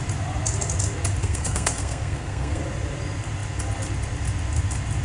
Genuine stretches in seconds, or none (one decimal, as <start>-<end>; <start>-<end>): 0.0-1.2; 2.6-5.0